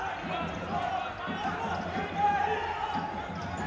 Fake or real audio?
real